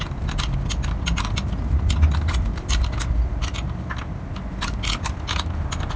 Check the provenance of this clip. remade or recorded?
recorded